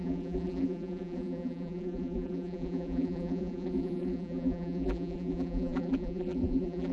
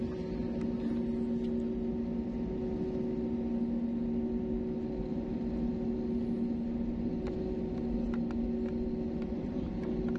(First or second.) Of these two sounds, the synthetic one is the first